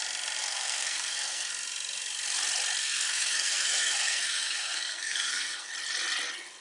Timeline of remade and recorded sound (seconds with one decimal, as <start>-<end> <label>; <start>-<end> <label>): 0.0-0.4 recorded; 0.4-1.5 remade; 1.5-2.8 recorded; 2.8-5.7 remade; 5.7-6.6 recorded